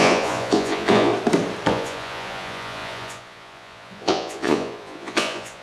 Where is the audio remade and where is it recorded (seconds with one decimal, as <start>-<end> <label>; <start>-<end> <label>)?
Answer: 0.0-1.1 remade; 1.1-1.7 recorded; 1.7-5.6 remade